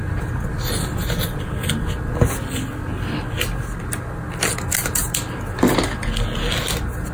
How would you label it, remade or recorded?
recorded